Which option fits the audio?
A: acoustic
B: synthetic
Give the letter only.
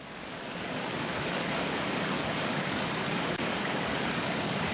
B